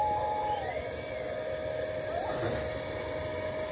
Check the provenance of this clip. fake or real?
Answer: real